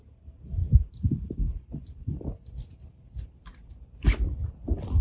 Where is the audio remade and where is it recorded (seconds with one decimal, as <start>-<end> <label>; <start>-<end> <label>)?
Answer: 0.0-5.0 recorded